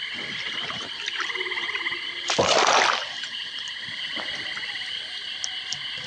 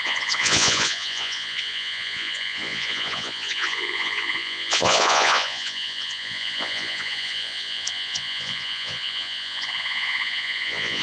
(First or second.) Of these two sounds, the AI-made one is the second